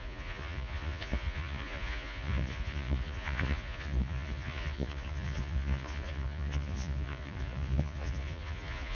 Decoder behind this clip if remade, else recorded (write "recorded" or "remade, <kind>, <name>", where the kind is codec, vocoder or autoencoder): remade, vocoder, Vocos